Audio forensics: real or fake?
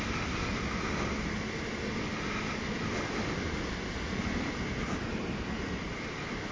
real